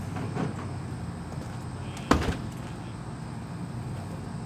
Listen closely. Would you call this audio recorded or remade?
recorded